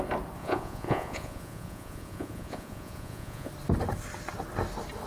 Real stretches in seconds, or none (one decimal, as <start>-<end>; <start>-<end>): 0.0-0.4; 3.5-5.1